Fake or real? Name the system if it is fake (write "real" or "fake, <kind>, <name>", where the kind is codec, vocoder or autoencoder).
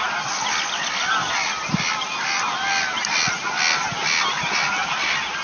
real